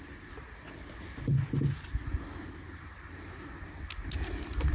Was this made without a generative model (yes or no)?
yes